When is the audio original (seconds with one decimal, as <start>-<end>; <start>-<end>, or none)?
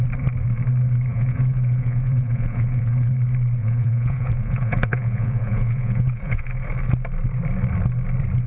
0.0-1.1; 3.1-3.6; 6.5-8.5